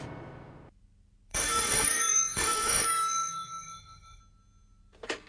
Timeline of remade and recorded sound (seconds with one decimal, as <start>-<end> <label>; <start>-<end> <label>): 0.0-1.3 recorded; 1.3-4.2 remade; 4.2-5.3 recorded

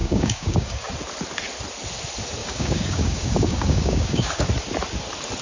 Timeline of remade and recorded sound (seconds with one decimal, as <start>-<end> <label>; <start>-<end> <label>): 0.0-0.9 remade; 0.9-2.4 recorded; 2.4-4.4 remade; 4.4-5.4 recorded

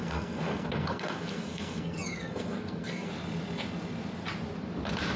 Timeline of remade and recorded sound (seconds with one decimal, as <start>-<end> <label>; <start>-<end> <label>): 0.0-3.1 remade; 3.1-5.2 recorded

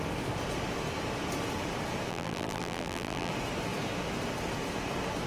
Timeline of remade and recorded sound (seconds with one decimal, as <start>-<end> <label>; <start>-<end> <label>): 0.0-2.1 recorded; 2.1-3.3 remade; 3.3-5.3 recorded

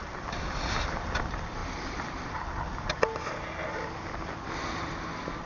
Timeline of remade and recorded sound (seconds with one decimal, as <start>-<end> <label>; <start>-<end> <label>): 0.0-5.5 recorded

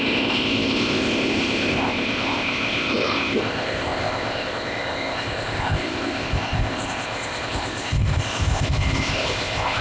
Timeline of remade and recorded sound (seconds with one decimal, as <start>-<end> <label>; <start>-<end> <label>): 0.0-9.8 remade

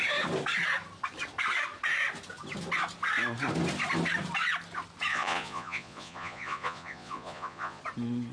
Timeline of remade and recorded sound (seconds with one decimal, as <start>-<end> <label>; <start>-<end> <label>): 0.0-5.1 recorded; 5.1-7.8 remade; 7.8-8.3 recorded